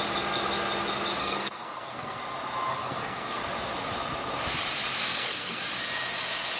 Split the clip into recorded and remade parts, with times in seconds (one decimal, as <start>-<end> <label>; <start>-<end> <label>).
0.0-1.2 recorded; 1.2-2.2 remade; 2.2-2.7 recorded; 2.7-3.4 remade; 3.4-5.0 recorded; 5.0-5.6 remade; 5.6-6.6 recorded